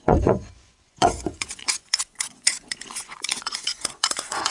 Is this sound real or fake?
fake